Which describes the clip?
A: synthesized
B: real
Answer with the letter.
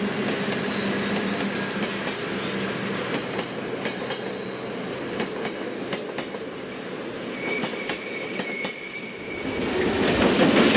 B